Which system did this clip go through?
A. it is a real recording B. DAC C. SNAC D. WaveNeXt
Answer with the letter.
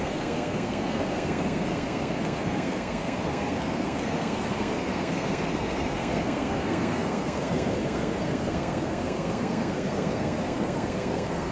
C